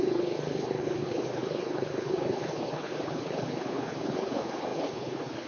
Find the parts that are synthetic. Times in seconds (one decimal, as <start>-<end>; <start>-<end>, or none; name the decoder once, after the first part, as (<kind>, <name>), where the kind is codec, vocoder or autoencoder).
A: 0.0-5.5 (codec, HILCodec)